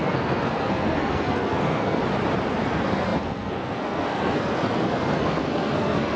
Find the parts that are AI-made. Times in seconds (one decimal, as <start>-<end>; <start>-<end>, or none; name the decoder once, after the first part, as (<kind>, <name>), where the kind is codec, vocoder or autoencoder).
0.0-2.0 (codec, SNAC); 2.5-6.2

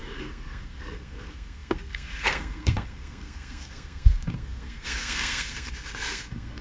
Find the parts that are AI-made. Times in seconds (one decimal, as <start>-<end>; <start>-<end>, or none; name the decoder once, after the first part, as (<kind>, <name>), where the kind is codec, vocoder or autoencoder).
0.0-6.6 (codec, SNAC)

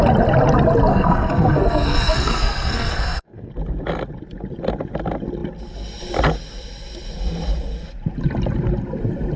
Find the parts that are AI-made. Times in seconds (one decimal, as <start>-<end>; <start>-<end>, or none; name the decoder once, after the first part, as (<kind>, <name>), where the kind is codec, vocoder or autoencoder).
0.9-3.5 (codec, SNAC)